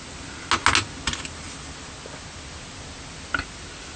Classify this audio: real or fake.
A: real